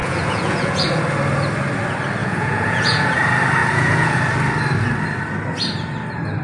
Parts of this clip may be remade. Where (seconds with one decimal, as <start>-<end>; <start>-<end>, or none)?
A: 0.0-1.0; 2.2-3.0; 3.6-4.2